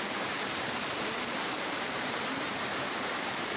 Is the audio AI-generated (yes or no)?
yes